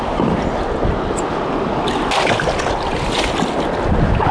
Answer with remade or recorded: recorded